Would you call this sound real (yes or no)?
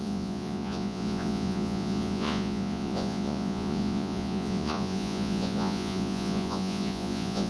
no